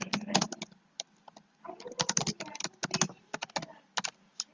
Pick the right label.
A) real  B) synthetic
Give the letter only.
A